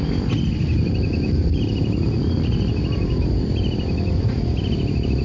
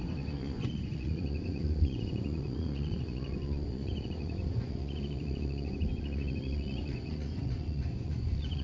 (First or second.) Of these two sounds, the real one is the first